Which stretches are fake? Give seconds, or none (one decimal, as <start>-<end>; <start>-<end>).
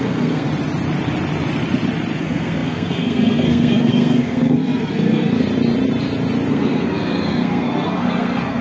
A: 0.0-0.5; 2.2-5.4; 6.5-8.6